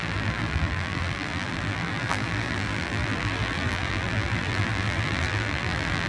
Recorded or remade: remade